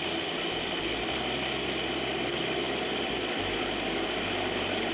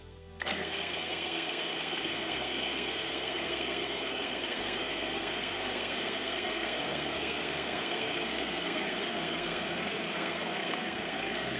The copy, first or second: second